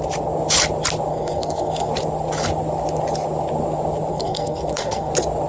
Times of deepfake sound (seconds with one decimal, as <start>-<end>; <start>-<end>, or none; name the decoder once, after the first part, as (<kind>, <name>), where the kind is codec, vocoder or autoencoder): 1.1-1.9 (codec, SNAC); 4.1-5.1

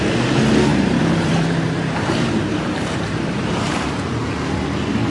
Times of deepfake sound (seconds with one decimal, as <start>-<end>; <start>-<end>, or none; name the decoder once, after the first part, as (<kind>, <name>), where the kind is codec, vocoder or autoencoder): 0.7-3.8 (vocoder, BigVGAN v2)